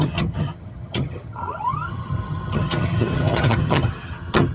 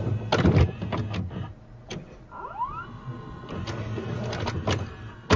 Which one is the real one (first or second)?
second